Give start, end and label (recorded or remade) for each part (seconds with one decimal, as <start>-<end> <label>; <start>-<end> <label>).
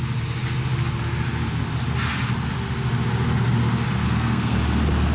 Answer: 0.0-4.0 recorded; 4.0-4.6 remade; 4.6-5.1 recorded